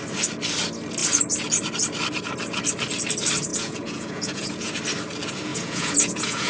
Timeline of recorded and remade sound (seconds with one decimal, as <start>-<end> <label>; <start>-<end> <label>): 0.0-3.5 recorded; 3.5-4.7 remade; 4.7-5.5 recorded; 5.5-6.5 remade